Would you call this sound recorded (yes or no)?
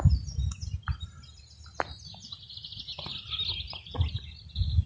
yes